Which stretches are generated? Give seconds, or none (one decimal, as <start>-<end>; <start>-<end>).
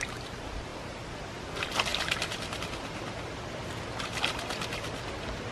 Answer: none